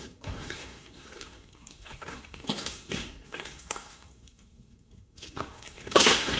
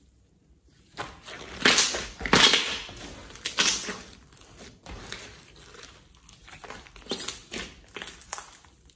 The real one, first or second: second